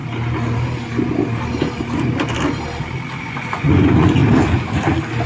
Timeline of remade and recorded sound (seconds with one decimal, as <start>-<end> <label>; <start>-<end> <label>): 0.0-3.2 recorded; 3.2-4.2 remade; 4.2-5.3 recorded